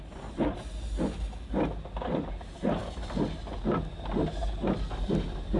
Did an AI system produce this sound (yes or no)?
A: no